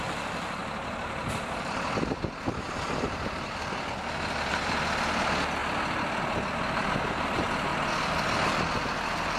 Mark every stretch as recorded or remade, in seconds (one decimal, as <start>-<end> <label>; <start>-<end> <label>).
0.0-7.7 recorded; 7.7-8.6 remade; 8.6-9.4 recorded